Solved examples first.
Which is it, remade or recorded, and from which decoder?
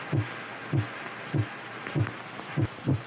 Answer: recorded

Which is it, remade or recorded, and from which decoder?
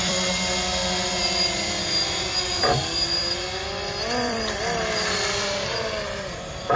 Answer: remade, vocoder, BigVGAN v2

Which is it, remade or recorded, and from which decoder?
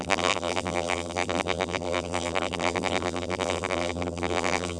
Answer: remade, vocoder, BigVGAN v2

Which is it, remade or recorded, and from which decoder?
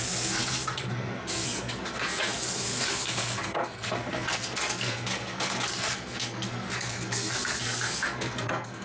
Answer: remade, codec, SNAC